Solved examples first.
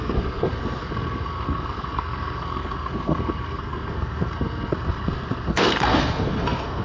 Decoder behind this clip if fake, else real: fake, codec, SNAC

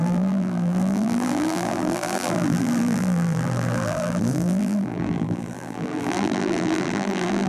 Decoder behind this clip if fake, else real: fake, vocoder, BigVGAN v2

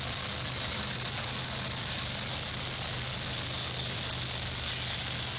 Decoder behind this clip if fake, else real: real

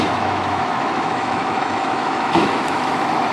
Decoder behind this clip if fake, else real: fake, autoencoder, DAC-VAE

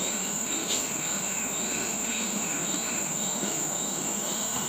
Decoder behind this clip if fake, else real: fake, autoencoder, DAC-VAE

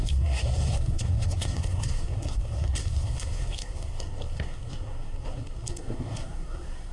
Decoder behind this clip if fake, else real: fake, codec, SNAC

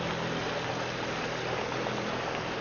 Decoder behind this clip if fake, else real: real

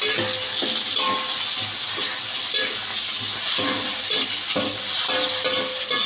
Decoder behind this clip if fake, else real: real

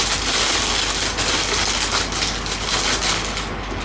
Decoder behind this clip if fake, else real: real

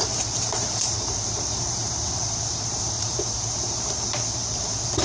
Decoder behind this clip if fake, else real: fake, vocoder, BigVGAN v2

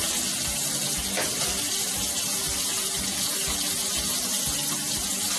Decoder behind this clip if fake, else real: real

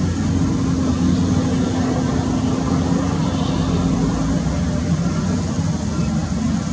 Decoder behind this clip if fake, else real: real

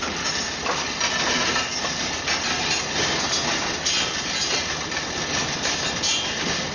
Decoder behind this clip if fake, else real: real